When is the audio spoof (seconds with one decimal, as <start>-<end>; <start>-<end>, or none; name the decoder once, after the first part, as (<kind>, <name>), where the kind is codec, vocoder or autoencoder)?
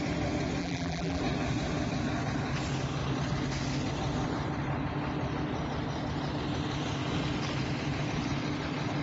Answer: 0.6-1.2 (vocoder, BigVGAN v2)